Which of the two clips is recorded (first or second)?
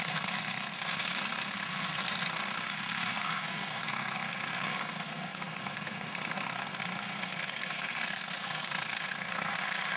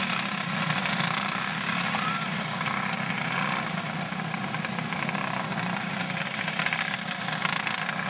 second